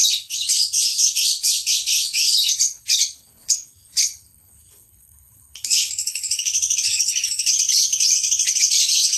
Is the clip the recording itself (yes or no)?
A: no